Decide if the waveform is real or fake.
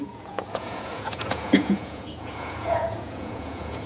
fake